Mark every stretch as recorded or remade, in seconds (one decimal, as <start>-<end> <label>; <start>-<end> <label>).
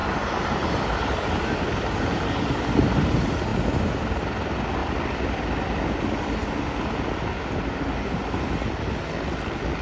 0.0-2.0 remade; 2.0-9.8 recorded